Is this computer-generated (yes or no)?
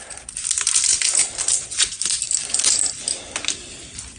no